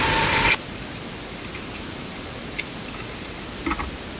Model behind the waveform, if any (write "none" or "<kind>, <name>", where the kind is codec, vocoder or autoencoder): none